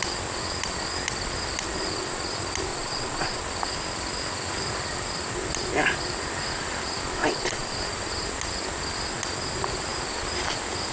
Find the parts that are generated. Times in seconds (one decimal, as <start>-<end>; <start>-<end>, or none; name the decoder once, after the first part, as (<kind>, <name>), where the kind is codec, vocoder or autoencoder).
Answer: 2.7-3.4 (vocoder, Vocos); 7.2-7.8